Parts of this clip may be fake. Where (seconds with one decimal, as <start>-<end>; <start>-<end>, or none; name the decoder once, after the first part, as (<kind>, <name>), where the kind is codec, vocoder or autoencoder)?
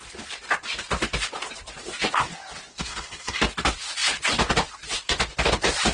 2.7-3.4 (codec, SNAC)